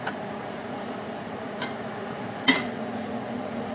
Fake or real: fake